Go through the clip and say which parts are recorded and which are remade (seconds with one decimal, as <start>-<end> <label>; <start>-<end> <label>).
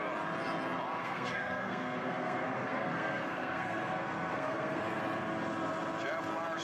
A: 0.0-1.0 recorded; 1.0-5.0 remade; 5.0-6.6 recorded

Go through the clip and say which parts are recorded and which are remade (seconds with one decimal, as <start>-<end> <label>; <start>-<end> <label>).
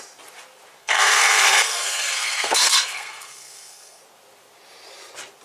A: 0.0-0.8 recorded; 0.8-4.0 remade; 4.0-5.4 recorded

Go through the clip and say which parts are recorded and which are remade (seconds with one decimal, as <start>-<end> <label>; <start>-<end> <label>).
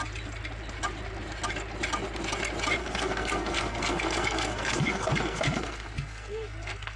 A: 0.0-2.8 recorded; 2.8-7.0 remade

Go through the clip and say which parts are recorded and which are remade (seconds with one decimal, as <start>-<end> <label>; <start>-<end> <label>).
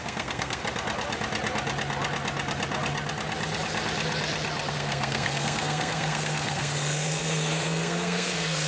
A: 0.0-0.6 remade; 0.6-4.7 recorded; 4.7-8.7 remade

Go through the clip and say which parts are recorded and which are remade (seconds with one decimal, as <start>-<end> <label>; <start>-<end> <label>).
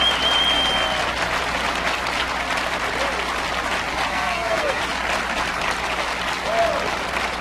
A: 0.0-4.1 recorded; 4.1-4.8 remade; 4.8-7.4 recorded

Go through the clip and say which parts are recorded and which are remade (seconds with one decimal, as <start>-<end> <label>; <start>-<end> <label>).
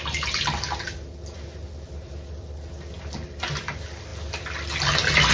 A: 0.0-5.3 recorded